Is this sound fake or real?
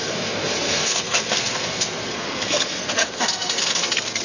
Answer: fake